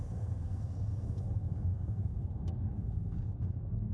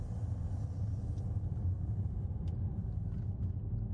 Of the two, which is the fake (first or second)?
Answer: first